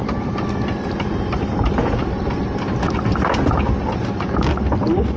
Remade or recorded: recorded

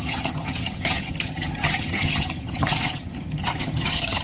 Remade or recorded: remade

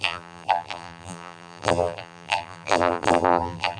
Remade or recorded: remade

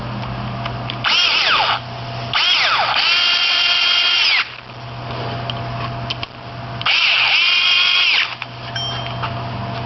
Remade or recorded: recorded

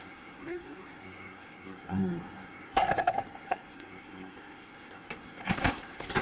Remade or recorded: remade